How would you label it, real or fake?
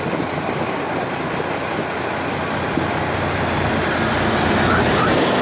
real